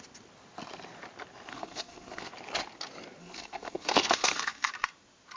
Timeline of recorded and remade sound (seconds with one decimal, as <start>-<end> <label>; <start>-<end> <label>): 0.0-1.5 recorded; 1.5-2.3 remade; 2.3-3.2 recorded; 3.2-4.7 remade; 4.7-5.4 recorded